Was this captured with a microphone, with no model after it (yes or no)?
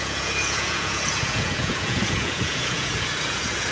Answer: no